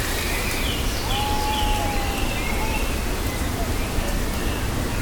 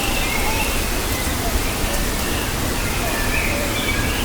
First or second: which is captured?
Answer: first